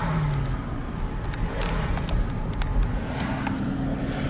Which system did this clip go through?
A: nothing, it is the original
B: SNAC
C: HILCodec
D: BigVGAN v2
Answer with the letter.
A